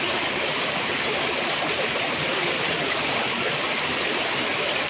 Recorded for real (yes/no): no